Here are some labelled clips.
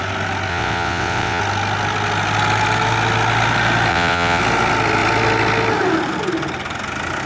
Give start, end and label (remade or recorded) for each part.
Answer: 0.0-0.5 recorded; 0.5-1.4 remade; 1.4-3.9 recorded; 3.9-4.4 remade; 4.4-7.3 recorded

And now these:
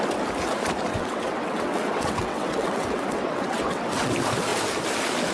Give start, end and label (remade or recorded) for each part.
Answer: 0.0-0.9 recorded; 0.9-4.1 remade; 4.1-5.3 recorded

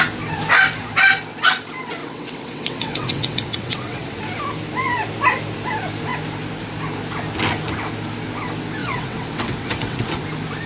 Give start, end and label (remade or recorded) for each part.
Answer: 0.0-2.0 recorded; 2.0-4.2 remade; 4.2-8.8 recorded; 8.8-10.2 remade; 10.2-10.7 recorded

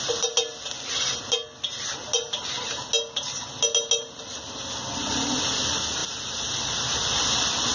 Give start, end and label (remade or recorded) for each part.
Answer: 0.0-7.7 recorded

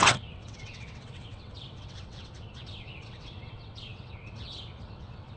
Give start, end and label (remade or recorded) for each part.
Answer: 0.0-5.4 remade

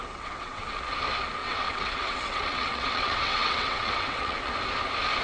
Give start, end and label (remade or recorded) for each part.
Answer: 0.0-0.6 remade; 0.6-1.4 recorded; 1.4-4.5 remade; 4.5-5.2 recorded